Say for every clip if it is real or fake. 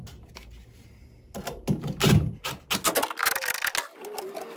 real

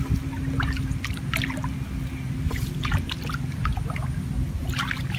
real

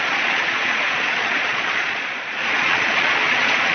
fake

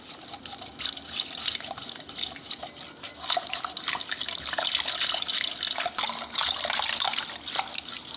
real